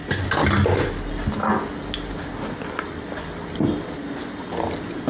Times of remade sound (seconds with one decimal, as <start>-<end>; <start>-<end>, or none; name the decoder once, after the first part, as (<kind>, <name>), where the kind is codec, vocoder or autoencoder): none